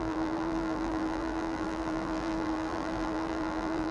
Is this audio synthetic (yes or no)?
yes